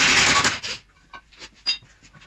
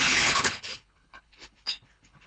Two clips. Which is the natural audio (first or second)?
first